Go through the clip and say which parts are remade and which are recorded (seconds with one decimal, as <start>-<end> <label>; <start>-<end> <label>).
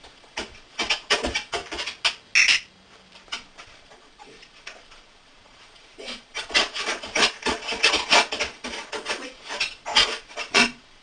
0.0-1.6 remade; 1.6-3.3 recorded; 3.3-11.0 remade